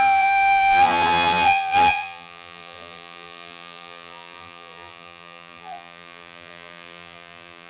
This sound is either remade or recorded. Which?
remade